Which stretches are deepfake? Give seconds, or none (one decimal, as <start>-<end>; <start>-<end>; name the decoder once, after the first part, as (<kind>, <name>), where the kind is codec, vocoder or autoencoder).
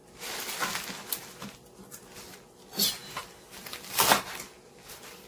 3.0-4.3 (vocoder, BigVGAN v2)